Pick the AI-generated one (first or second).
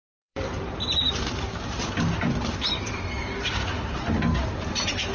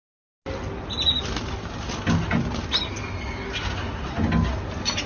first